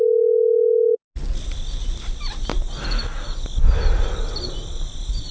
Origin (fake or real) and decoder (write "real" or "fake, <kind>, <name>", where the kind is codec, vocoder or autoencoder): real